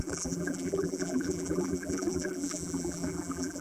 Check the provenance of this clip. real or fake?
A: fake